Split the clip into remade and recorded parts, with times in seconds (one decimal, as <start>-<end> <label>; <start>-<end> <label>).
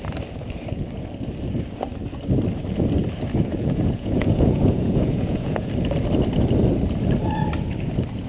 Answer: 0.0-3.5 recorded; 3.5-5.7 remade; 5.7-8.3 recorded